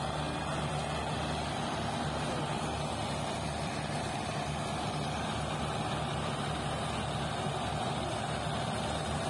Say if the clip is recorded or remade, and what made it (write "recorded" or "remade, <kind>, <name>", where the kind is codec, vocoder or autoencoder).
recorded